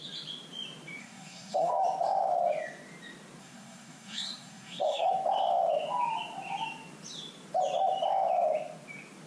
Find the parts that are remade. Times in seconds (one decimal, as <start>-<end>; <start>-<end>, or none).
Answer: 1.0-1.7; 3.4-5.1